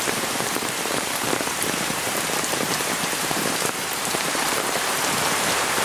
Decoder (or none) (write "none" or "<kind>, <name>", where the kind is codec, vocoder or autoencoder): vocoder, BigVGAN v2